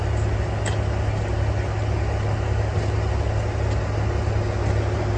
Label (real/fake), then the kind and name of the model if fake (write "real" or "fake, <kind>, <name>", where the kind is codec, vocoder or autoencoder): real